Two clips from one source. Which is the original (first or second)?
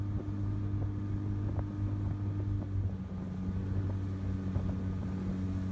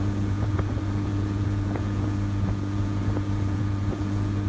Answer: first